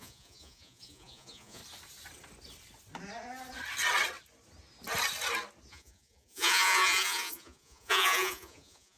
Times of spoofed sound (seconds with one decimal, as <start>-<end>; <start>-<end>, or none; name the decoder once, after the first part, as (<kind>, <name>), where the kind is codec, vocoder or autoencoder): 0.0-1.6 (vocoder, Vocos); 5.7-9.0